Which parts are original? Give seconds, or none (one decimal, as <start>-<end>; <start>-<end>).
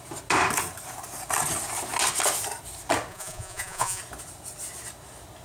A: 0.0-3.1; 4.0-5.4